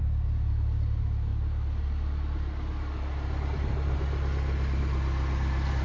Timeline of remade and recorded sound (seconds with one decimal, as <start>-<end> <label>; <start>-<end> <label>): 0.0-5.8 recorded